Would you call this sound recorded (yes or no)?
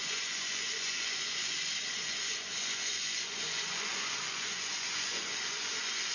no